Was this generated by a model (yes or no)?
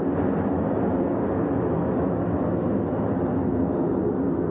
no